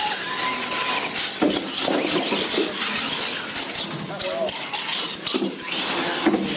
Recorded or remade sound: recorded